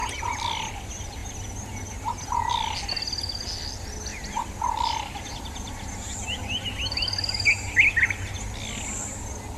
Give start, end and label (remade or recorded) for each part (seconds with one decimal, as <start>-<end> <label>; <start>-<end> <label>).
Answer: 0.0-9.6 recorded